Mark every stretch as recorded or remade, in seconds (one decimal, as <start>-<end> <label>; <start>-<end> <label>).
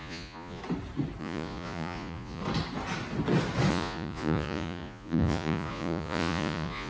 0.0-0.6 remade; 0.6-1.2 recorded; 1.2-2.4 remade; 2.4-3.7 recorded; 3.7-6.9 remade